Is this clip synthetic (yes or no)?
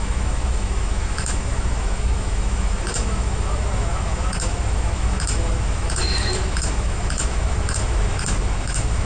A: yes